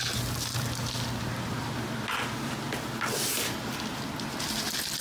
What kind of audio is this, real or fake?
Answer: real